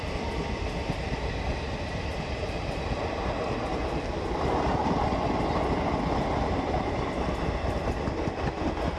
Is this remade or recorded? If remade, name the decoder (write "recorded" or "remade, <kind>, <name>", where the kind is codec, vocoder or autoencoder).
recorded